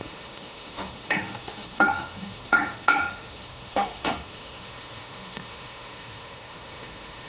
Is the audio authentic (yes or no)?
no